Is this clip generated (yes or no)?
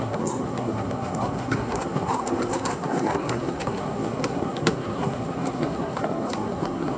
yes